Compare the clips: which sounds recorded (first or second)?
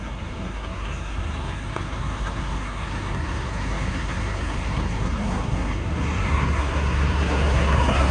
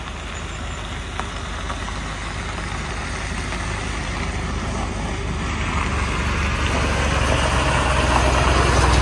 second